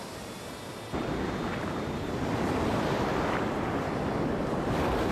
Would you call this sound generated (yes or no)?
no